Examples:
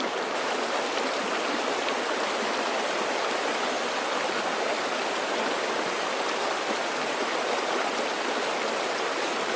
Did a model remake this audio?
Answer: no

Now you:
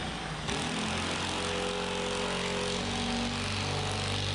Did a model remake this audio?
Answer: no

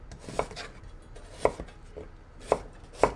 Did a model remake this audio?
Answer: no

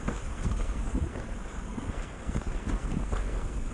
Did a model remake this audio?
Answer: yes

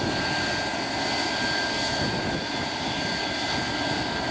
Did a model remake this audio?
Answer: no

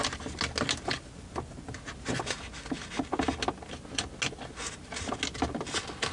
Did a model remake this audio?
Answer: no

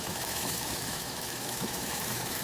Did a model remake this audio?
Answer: yes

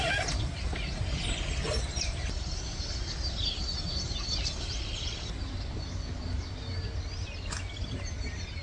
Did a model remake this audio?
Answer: no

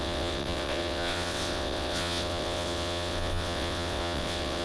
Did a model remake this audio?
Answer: yes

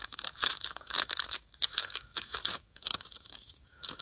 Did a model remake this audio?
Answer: yes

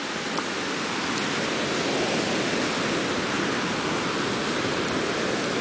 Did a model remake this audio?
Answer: no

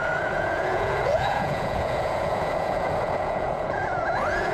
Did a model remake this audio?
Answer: yes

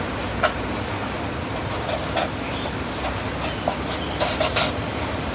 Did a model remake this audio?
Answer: no